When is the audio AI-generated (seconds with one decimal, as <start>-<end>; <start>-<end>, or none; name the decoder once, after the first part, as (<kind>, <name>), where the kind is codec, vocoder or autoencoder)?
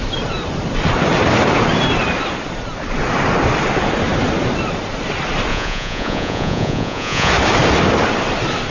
5.5-7.3 (vocoder, Vocos)